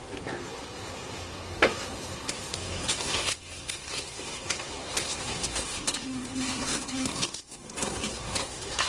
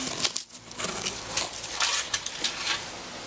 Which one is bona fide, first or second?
second